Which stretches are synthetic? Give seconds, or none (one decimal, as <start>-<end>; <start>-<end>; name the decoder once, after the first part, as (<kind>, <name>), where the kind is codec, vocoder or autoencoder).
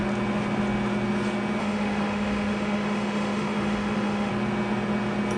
1.6-4.3 (autoencoder, DAC-VAE)